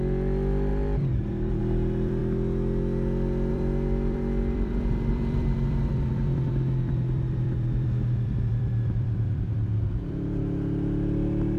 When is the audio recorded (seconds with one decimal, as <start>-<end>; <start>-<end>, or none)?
2.2-3.5